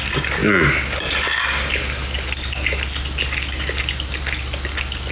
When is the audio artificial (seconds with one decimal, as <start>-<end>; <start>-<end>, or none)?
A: none